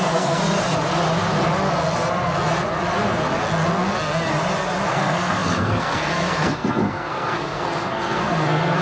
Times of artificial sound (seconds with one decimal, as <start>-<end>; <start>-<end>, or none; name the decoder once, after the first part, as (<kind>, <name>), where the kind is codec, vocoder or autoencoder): 0.0-0.4 (codec, SNAC); 4.9-8.8